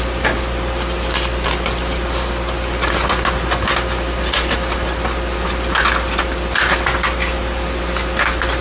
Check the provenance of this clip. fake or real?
real